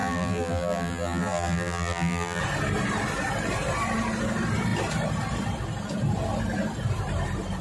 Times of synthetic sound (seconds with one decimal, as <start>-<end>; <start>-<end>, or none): 0.0-2.4